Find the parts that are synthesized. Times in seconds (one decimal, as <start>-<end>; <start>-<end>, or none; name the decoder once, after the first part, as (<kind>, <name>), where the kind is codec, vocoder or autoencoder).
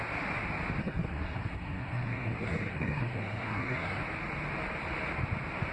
0.8-4.0 (codec, SNAC)